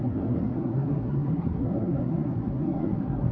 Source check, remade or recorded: remade